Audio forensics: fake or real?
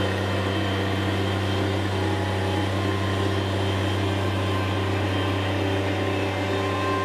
real